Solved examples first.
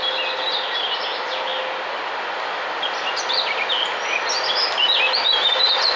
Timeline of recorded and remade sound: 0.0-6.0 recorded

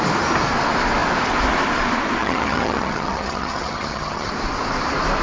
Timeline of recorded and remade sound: 0.0-2.2 recorded; 2.2-4.3 remade; 4.3-5.2 recorded

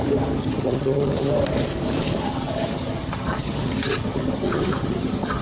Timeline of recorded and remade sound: 0.0-0.4 recorded; 0.4-1.3 remade; 1.3-2.0 recorded; 2.0-5.4 remade